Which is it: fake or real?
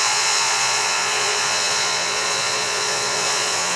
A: fake